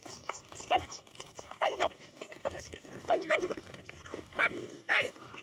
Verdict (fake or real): fake